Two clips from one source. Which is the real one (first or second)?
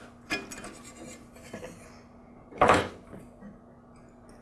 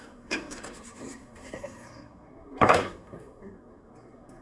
first